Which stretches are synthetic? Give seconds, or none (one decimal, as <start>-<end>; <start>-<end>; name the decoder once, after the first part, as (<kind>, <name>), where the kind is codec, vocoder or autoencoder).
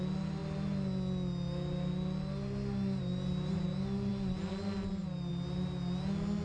none